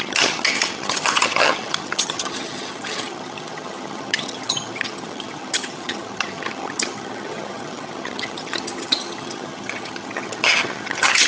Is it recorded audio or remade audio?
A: remade